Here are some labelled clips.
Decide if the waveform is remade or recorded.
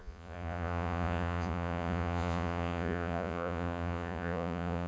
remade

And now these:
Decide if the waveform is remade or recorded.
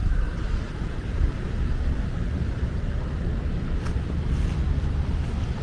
recorded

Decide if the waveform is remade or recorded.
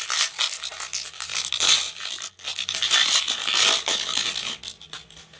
recorded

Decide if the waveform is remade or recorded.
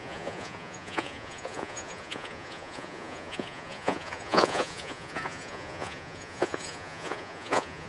remade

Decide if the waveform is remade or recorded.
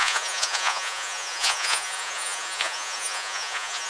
remade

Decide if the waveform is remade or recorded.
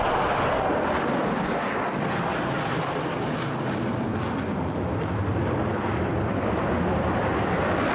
recorded